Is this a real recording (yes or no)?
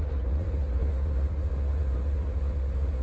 no